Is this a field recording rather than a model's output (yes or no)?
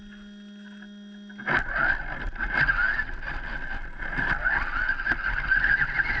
yes